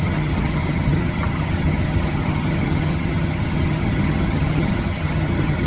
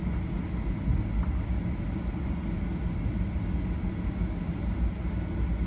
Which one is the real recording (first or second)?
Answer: second